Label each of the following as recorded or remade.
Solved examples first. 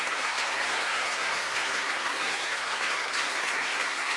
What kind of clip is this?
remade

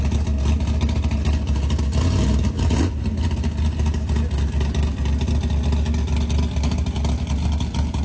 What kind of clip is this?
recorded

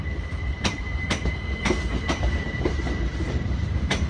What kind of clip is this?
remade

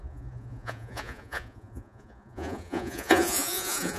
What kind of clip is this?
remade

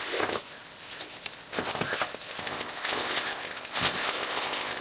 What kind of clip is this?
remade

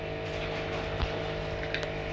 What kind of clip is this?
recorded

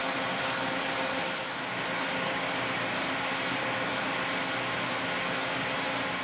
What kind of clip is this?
recorded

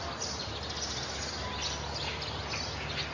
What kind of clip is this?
recorded